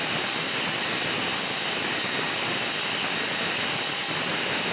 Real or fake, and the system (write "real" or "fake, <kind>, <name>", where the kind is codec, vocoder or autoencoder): real